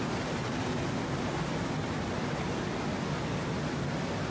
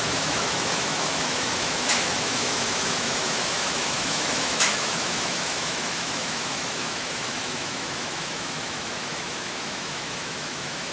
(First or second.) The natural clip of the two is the first